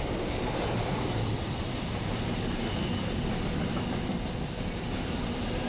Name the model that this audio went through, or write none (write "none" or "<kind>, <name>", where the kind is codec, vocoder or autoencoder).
none